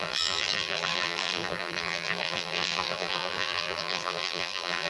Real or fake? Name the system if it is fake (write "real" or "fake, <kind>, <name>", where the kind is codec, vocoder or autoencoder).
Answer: fake, vocoder, BigVGAN v2